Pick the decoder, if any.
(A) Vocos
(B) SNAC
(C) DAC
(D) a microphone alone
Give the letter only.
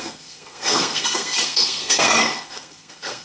B